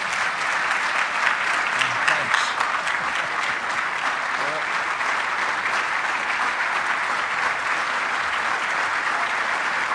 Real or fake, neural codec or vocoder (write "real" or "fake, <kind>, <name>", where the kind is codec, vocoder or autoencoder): real